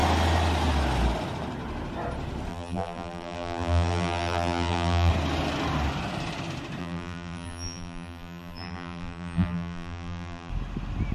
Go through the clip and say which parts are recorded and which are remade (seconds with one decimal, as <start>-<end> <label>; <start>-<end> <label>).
0.0-2.5 recorded; 2.5-5.1 remade; 5.1-6.8 recorded; 6.8-10.5 remade; 10.5-11.1 recorded